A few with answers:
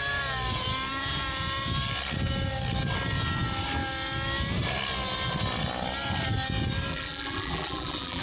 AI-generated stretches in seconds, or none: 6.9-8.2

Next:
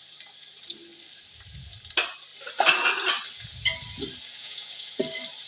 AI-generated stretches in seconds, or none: 4.4-5.0

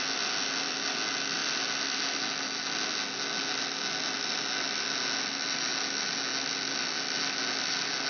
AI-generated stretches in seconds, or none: none

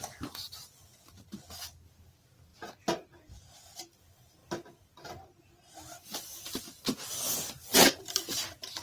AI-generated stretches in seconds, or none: none

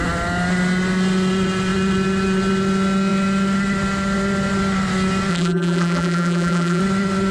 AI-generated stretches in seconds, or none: 5.3-6.8

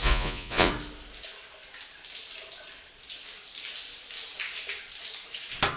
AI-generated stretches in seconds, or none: 0.0-0.7

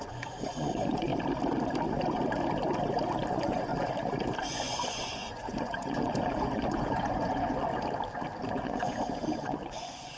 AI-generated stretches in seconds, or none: 0.0-1.1; 3.3-3.7; 4.5-7.7; 8.5-10.2

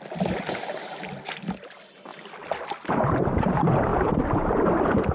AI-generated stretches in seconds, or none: 0.0-2.1; 2.9-5.1